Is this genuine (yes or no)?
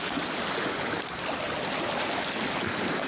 yes